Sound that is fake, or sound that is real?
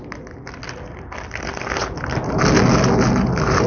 real